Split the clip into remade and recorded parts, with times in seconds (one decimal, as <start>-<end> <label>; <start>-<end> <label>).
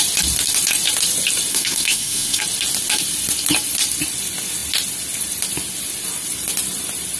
0.0-1.5 recorded; 1.5-2.4 remade; 2.4-7.2 recorded